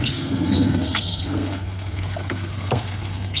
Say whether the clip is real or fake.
fake